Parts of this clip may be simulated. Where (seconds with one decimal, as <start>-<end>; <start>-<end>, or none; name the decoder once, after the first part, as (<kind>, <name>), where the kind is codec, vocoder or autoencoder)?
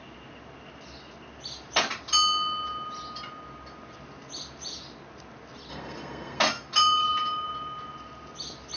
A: 5.7-6.4 (codec, SNAC)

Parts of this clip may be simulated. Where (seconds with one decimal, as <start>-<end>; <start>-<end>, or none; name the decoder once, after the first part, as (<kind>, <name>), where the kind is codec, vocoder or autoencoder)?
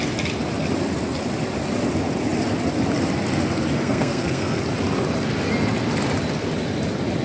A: 3.8-4.6 (codec, SNAC)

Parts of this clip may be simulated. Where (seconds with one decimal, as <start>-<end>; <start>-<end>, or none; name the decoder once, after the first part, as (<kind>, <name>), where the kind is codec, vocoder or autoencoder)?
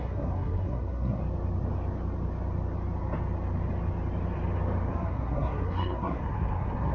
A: 0.0-1.2 (codec, SNAC); 4.9-6.9